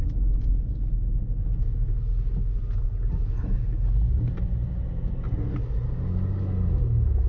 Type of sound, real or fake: real